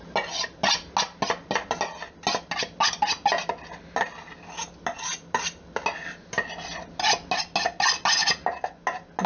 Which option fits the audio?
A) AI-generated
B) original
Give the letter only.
B